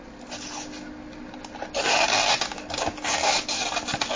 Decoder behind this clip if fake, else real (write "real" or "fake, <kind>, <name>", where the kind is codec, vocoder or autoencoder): real